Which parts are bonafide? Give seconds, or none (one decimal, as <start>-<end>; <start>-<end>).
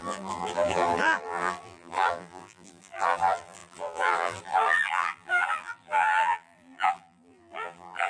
none